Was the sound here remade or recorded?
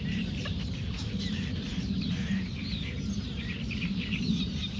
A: remade